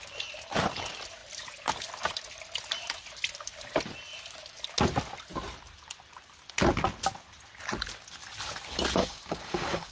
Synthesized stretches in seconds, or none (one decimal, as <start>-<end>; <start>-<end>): 9.0-9.9

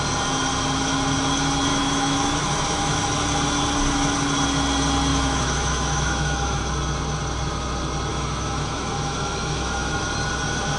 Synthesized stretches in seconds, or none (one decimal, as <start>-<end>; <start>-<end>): 1.7-3.0; 5.1-6.6; 8.1-10.0

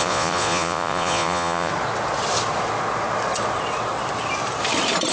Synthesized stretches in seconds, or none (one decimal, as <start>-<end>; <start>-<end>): 0.0-1.7

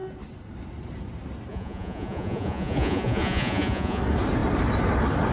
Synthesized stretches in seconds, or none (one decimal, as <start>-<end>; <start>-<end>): 1.5-4.0

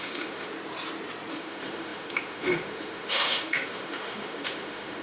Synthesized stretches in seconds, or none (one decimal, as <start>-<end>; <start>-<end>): 0.0-0.5; 1.3-5.0